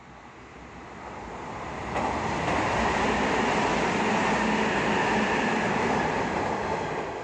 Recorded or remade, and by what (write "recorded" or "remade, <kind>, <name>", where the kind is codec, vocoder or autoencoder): recorded